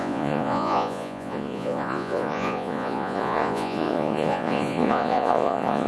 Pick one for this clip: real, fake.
fake